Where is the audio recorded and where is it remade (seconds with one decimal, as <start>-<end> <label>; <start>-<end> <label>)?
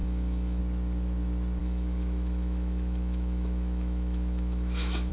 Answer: 0.0-0.6 remade; 0.6-1.6 recorded; 1.6-5.1 remade